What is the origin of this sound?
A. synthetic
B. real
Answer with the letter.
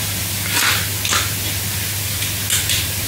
B